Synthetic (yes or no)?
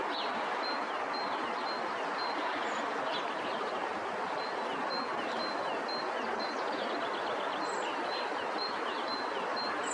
no